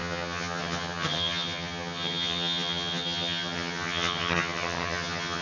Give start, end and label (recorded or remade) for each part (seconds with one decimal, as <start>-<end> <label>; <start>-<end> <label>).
0.0-5.4 remade